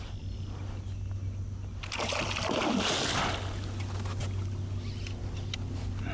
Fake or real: real